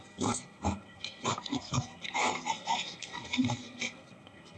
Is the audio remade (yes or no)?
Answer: yes